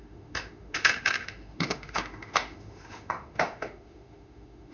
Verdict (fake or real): fake